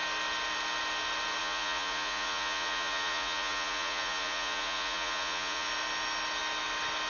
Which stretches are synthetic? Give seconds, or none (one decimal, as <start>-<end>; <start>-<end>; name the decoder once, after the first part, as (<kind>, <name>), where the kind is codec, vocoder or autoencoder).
1.4-5.7 (vocoder, Vocos)

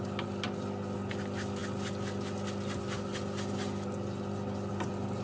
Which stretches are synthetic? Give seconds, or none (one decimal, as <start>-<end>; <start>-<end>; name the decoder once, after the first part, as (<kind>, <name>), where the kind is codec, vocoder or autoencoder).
none

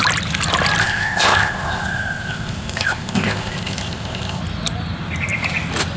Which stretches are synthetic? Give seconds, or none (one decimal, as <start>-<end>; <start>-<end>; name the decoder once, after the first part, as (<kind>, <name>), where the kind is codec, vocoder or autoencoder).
0.8-4.4 (codec, ZipCodec)

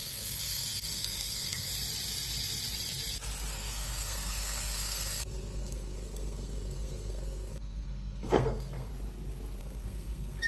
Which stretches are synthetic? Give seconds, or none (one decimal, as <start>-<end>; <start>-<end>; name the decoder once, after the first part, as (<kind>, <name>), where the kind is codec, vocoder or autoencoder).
0.0-1.7 (codec, SNAC); 3.5-8.9; 9.6-10.5